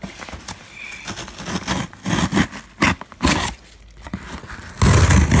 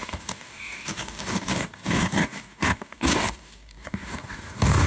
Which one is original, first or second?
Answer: first